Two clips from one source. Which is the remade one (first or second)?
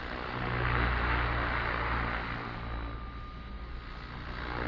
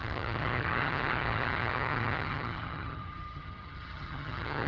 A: second